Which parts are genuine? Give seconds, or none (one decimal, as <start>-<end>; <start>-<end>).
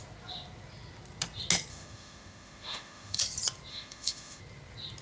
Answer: 0.0-1.7; 3.2-3.7; 4.4-5.0